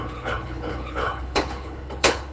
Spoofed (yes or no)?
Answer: yes